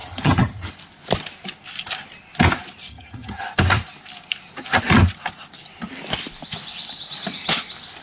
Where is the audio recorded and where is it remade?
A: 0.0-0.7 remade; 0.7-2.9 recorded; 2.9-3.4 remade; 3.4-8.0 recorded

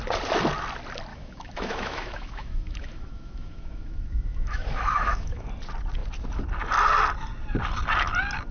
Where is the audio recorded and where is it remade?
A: 0.0-1.1 recorded; 1.1-5.5 remade; 5.5-8.5 recorded

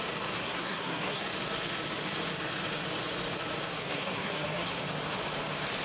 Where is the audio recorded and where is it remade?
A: 0.0-0.4 recorded; 0.4-1.2 remade; 1.2-3.7 recorded; 3.7-4.8 remade; 4.8-5.8 recorded

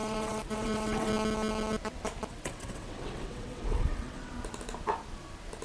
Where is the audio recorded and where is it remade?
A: 0.0-1.1 remade; 1.1-2.3 recorded; 2.3-4.3 remade; 4.3-5.6 recorded

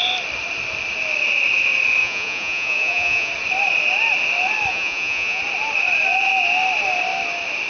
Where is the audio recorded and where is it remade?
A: 0.0-2.0 recorded; 2.0-3.3 remade; 3.3-4.7 recorded; 4.7-5.4 remade; 5.4-7.7 recorded

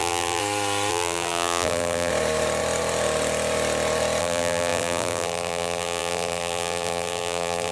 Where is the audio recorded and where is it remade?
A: 0.0-0.4 remade; 0.4-0.9 recorded; 0.9-2.1 remade; 2.1-4.2 recorded; 4.2-7.7 remade